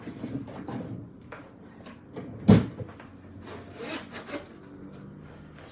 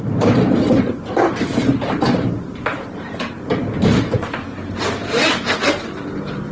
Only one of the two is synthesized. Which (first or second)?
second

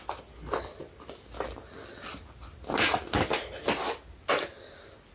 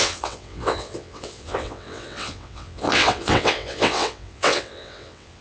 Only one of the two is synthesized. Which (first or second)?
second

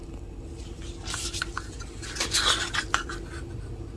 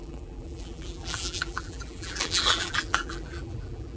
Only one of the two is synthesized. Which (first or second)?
second